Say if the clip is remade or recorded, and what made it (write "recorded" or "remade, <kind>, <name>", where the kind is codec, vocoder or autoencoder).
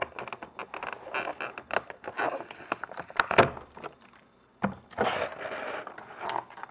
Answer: recorded